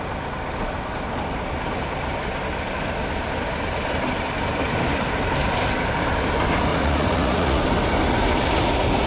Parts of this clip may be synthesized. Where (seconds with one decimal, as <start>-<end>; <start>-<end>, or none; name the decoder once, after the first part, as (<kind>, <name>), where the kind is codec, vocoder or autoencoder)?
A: 6.7-7.6 (vocoder, Vocos)